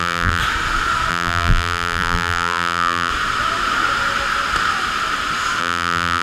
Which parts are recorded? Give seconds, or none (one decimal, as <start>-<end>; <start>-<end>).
0.4-1.1; 3.1-5.6